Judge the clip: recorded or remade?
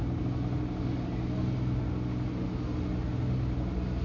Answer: recorded